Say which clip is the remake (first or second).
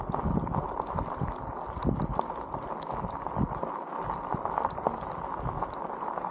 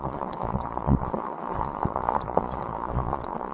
second